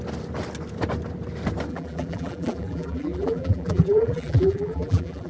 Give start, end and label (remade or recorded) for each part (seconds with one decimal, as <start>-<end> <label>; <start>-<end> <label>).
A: 0.0-1.7 recorded; 1.7-5.3 remade

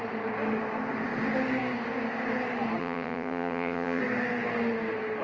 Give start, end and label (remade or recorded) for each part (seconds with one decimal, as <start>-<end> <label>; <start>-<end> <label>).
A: 0.0-2.8 recorded; 2.8-4.0 remade; 4.0-5.2 recorded